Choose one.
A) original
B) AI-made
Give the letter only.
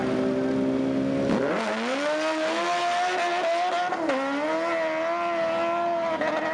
A